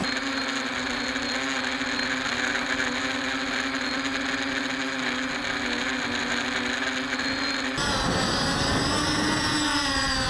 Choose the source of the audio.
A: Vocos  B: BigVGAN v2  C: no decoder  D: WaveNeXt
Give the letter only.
C